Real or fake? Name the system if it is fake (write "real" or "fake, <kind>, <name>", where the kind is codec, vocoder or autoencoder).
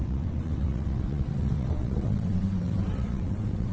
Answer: fake, vocoder, WaveNeXt